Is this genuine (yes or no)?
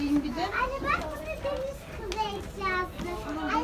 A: yes